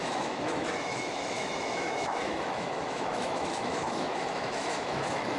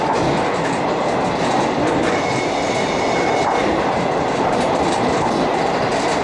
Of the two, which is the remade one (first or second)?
first